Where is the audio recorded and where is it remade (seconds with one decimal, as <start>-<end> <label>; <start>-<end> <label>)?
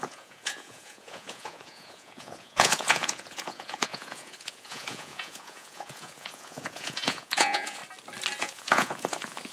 0.0-7.8 remade; 7.8-8.4 recorded; 8.4-9.5 remade